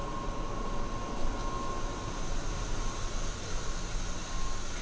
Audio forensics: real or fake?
real